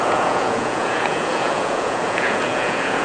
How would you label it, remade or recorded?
remade